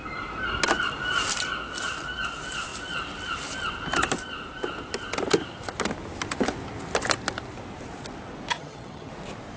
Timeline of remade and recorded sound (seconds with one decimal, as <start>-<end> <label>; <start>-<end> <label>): 0.0-8.5 recorded; 8.5-9.1 remade; 9.1-9.6 recorded